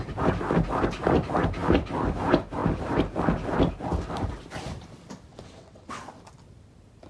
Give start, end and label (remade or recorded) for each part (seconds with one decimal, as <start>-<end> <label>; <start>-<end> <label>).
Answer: 0.0-5.3 recorded; 5.3-6.0 remade; 6.0-7.1 recorded